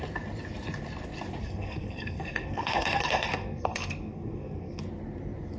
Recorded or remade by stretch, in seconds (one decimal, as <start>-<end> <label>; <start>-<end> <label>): 0.0-1.4 recorded; 1.4-4.8 remade; 4.8-5.6 recorded